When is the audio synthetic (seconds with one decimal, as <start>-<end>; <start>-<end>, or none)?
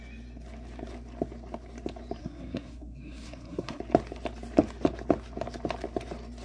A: 2.2-3.8